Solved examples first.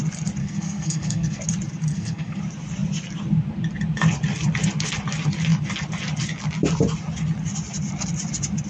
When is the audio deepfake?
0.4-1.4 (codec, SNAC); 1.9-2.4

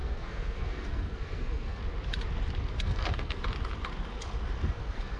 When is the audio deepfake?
0.0-1.8 (codec, SNAC); 2.7-3.4; 4.7-5.2

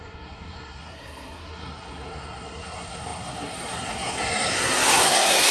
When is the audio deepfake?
0.0-5.5 (codec, SNAC)

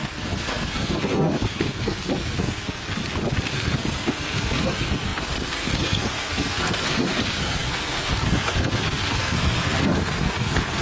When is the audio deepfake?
0.0-3.0 (codec, SNAC); 3.5-10.8